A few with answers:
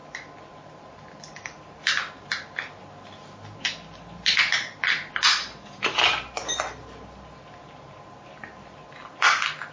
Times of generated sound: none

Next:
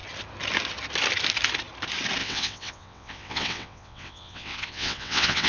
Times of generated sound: 2.2-5.5 (vocoder, WaveNeXt)

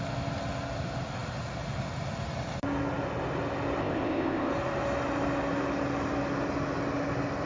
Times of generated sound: 3.8-4.5 (codec, ZipCodec)